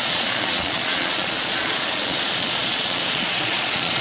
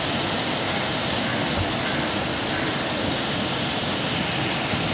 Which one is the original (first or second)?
second